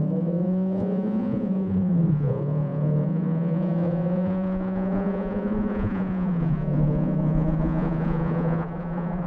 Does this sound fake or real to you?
fake